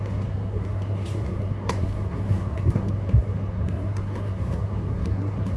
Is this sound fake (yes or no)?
yes